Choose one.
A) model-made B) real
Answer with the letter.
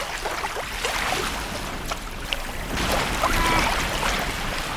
B